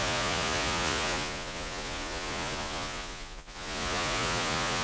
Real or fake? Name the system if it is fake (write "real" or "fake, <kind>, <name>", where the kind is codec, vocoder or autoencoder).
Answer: fake, vocoder, Vocos